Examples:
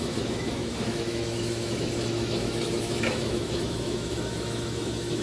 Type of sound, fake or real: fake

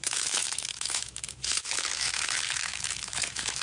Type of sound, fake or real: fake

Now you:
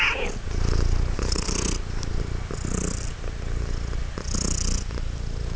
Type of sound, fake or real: real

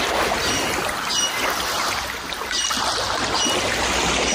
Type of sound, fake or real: real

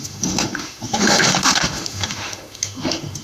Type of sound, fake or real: fake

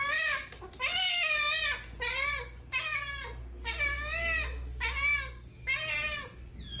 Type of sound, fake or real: real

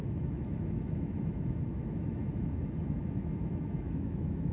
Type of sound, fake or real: fake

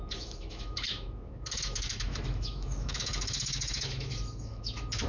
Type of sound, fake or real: fake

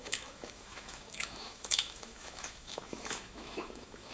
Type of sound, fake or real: fake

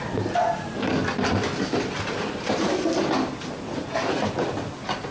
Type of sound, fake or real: real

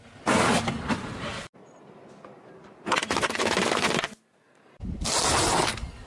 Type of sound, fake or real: real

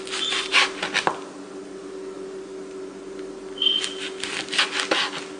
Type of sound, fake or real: real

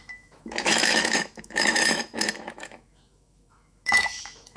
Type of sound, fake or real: fake